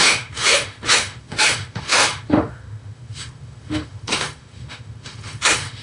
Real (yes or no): no